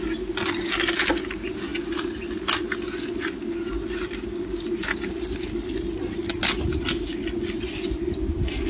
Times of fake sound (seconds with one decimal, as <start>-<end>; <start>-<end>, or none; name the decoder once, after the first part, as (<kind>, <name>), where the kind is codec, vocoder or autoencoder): none